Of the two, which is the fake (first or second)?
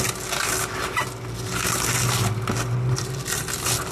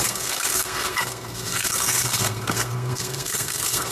second